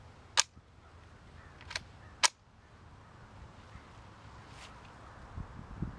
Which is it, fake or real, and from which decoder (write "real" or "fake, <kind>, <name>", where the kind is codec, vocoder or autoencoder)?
real